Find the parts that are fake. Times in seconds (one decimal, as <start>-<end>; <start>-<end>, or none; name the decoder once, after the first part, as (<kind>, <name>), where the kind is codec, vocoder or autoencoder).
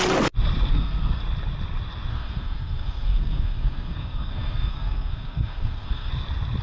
0.7-1.2 (codec, SNAC); 2.1-6.1